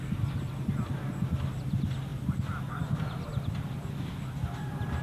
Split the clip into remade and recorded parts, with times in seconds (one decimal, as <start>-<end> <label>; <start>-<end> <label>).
0.0-3.3 recorded; 3.3-5.0 remade